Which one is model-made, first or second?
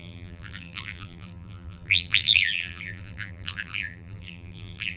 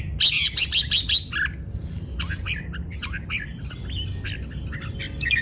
first